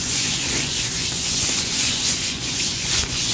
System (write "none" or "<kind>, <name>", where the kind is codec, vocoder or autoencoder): vocoder, Vocos